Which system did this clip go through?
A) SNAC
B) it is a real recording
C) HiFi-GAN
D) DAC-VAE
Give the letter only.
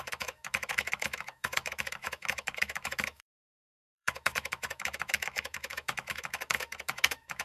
D